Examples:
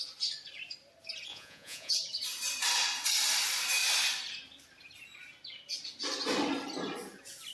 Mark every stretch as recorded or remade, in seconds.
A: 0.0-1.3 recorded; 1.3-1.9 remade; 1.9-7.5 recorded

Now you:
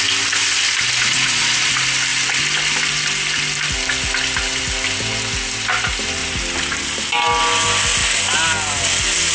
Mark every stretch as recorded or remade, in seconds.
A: 0.0-1.1 recorded; 1.1-1.7 remade; 1.7-9.3 recorded